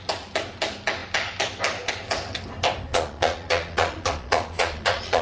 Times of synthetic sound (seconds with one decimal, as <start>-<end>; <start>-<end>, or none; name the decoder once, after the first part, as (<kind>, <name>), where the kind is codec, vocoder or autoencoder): 2.9-5.2 (vocoder, Vocos)